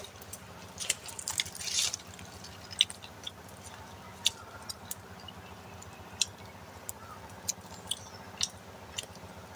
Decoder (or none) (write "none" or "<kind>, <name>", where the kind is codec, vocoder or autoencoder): none